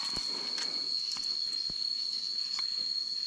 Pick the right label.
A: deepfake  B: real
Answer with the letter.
B